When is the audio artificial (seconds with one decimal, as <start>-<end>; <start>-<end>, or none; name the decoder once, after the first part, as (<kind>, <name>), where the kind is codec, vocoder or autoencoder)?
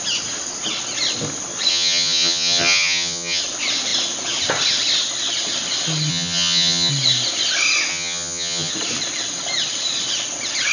1.7-3.4 (vocoder, HiFi-GAN); 6.1-6.9; 7.9-8.7